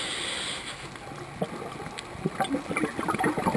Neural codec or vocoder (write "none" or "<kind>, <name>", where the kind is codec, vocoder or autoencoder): none